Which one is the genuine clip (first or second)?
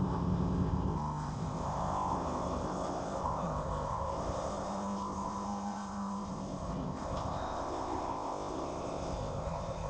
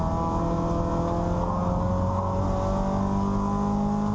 second